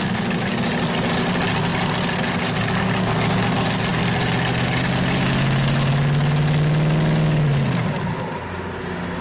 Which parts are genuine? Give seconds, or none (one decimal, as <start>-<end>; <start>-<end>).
0.0-9.2